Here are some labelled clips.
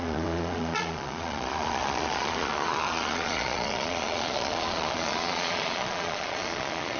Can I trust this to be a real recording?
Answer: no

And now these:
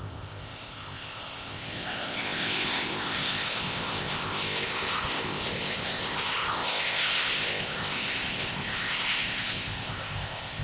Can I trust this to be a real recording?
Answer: no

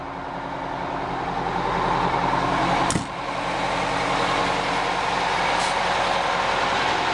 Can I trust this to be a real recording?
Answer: yes